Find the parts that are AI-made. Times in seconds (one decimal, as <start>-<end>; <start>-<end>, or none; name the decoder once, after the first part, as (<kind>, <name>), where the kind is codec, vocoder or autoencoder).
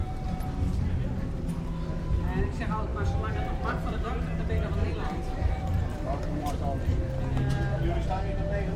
2.9-6.5 (vocoder, BigVGAN v2)